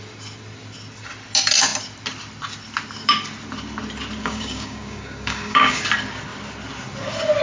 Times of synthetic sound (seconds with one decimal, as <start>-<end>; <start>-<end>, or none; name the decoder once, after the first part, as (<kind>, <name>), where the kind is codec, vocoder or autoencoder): 4.2-5.8 (codec, DAC)